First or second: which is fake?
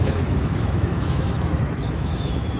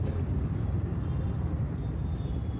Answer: first